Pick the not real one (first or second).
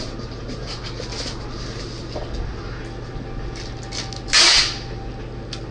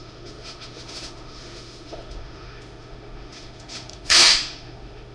second